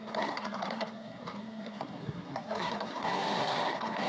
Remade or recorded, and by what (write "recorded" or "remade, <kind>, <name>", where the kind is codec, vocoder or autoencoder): remade, codec, SNAC